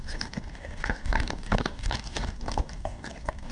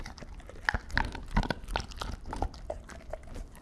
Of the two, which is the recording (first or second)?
second